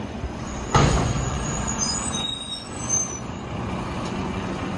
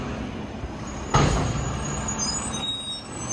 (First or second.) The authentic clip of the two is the second